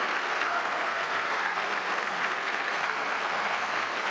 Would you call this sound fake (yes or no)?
yes